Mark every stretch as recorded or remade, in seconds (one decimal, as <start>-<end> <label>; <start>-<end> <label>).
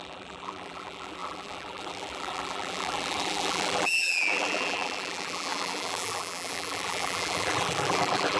0.0-8.4 remade